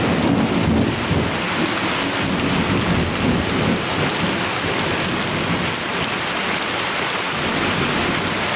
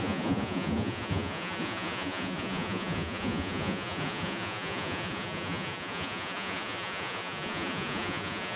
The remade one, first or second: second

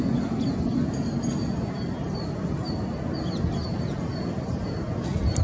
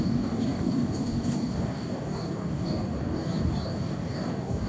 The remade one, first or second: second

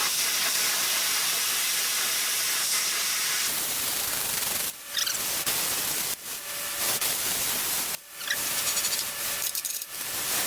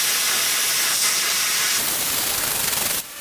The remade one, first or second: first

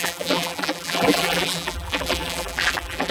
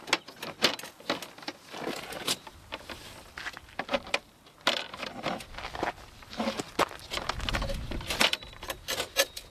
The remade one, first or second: first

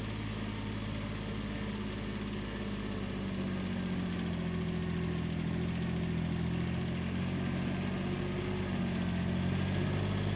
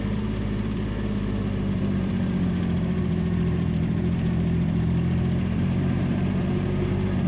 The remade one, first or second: second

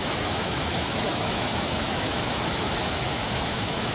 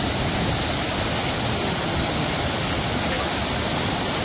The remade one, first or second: first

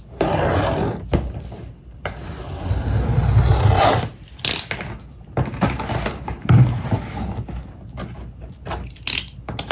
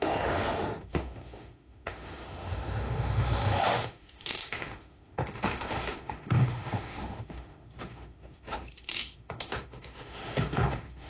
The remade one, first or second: second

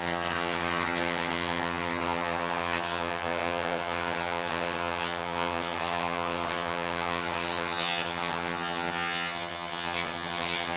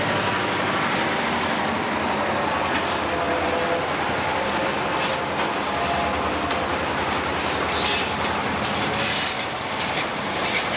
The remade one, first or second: first